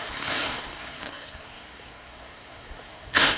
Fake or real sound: fake